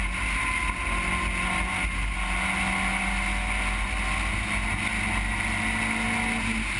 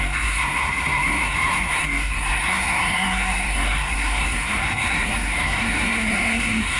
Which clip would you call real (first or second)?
first